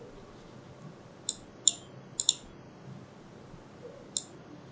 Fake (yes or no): no